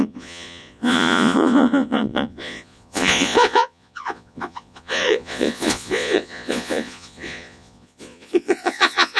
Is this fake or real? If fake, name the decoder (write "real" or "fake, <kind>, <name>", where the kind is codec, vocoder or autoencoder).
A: fake, vocoder, Vocos